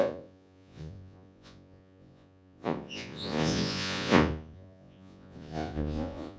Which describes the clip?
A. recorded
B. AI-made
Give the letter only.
B